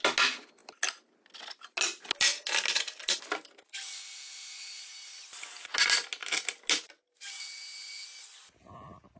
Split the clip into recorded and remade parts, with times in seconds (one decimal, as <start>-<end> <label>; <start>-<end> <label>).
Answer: 0.0-9.2 recorded